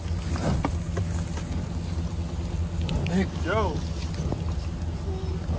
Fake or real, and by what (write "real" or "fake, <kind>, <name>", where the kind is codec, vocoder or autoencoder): real